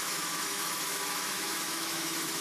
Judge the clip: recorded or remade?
remade